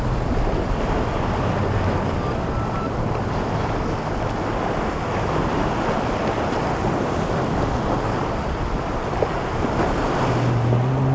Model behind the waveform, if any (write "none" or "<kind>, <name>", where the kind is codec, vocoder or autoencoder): none